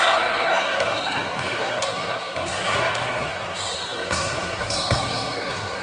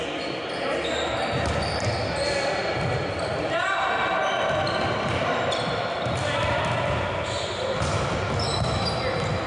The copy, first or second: first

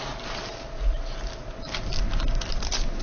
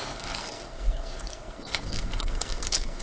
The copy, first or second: second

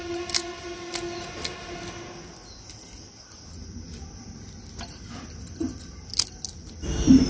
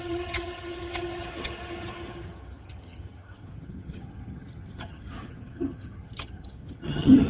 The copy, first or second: second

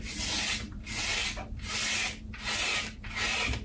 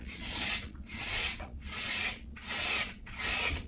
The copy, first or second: second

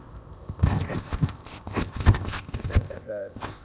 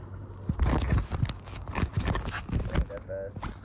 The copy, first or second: first